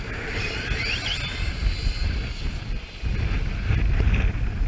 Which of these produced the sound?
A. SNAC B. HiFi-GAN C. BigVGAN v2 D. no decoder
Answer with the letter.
D